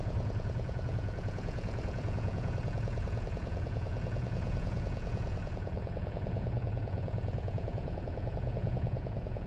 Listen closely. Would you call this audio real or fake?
fake